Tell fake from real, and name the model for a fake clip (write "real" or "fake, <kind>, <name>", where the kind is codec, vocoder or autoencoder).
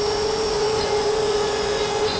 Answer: fake, vocoder, Vocos